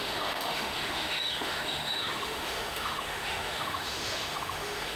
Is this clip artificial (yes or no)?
yes